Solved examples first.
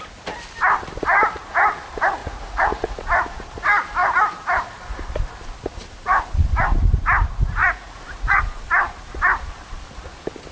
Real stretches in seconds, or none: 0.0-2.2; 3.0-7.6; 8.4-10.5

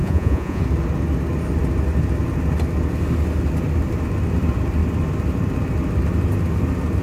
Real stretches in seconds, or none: 0.6-7.0

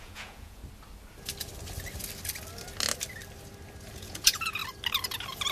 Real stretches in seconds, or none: 0.6-3.9; 4.6-5.5

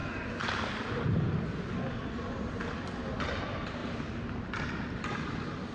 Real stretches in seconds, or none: 0.0-5.7

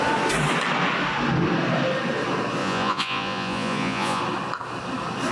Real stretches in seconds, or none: 0.0-2.6; 4.2-5.3

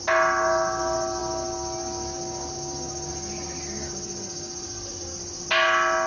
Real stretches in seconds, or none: 0.0-6.1